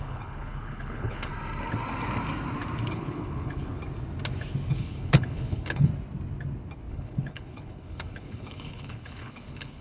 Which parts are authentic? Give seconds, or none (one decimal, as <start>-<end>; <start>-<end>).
1.3-2.9; 3.8-4.7; 5.9-6.9